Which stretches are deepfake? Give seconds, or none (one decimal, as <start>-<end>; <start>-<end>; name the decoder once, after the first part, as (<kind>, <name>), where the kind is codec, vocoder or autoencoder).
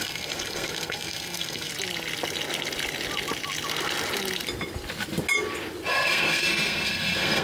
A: 0.0-1.7 (codec, SNAC); 5.9-7.4